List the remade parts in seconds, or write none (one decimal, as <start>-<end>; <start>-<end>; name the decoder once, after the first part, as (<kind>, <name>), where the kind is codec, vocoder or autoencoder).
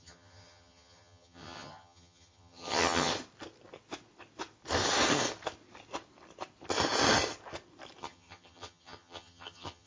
0.0-3.1 (vocoder, HiFi-GAN); 8.0-9.9